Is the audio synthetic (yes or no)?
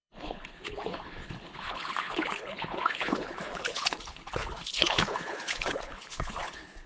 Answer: yes